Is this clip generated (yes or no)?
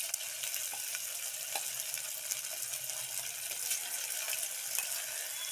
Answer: no